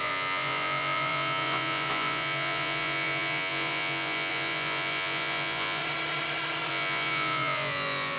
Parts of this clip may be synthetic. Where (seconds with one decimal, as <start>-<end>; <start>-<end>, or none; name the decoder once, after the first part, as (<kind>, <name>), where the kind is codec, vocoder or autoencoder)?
0.0-5.8 (vocoder, Vocos); 6.7-8.2